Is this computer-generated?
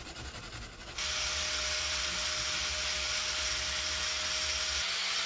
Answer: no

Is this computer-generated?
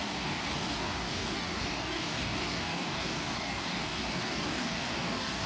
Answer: yes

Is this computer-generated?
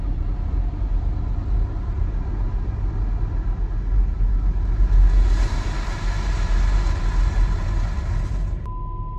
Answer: no